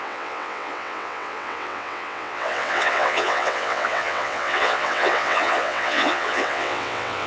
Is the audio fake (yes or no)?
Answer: yes